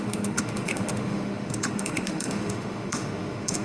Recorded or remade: remade